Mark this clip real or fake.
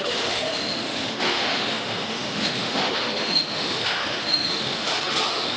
fake